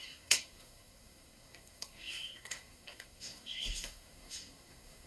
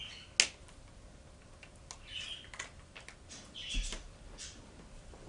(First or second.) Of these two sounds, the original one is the second